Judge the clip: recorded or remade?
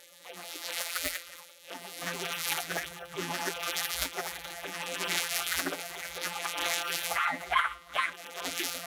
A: remade